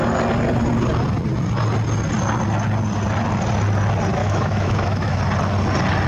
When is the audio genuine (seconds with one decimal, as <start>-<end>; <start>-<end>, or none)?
0.0-4.2; 5.2-6.1